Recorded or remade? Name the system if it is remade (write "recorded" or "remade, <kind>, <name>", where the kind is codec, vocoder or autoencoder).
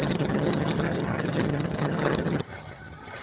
remade, vocoder, HiFi-GAN